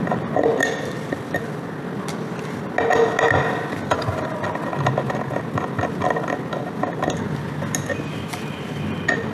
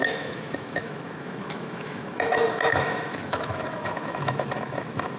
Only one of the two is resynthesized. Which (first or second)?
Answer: second